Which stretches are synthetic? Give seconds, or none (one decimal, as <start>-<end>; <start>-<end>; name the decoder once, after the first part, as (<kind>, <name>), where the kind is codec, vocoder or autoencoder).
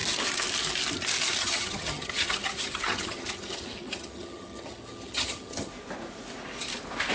1.4-5.7 (vocoder, HiFi-GAN)